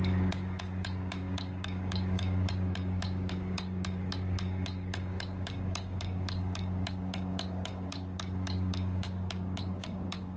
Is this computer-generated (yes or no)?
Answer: yes